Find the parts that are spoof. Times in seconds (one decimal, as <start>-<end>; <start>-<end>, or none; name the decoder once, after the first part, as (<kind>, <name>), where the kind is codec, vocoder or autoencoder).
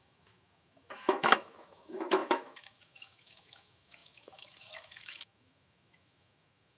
0.0-6.8 (autoencoder, DAC-VAE)